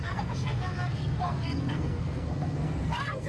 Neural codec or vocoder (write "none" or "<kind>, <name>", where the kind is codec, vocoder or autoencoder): codec, SNAC